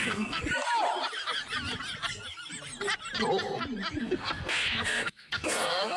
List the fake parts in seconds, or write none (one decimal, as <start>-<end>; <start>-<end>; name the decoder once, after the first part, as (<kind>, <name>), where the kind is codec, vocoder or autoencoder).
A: 0.0-0.4 (codec, SNAC); 4.0-6.0